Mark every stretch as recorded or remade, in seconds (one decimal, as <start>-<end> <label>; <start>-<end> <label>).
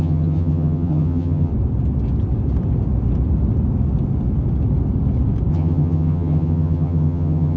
0.0-1.5 remade; 1.5-5.5 recorded; 5.5-7.6 remade